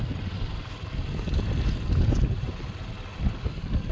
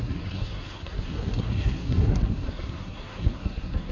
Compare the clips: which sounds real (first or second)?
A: first